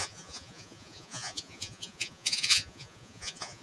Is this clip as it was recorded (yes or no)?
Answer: no